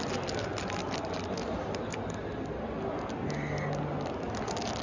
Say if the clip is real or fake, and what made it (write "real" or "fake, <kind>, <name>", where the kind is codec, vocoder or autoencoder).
real